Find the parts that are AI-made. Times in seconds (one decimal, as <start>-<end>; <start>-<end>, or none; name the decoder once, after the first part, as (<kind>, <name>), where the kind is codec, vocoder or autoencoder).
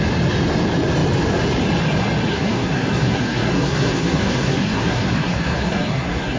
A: 2.3-6.4 (codec, SNAC)